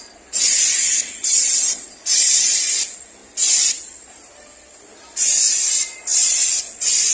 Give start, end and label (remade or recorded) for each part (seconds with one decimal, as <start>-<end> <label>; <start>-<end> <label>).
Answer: 0.0-7.1 recorded